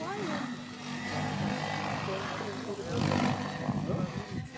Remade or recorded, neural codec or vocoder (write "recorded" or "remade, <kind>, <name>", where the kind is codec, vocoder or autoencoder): recorded